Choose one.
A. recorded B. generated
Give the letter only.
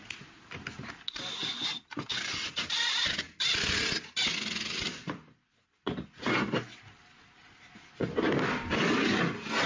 A